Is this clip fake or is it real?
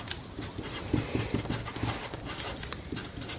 real